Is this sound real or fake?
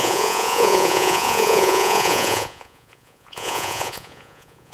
fake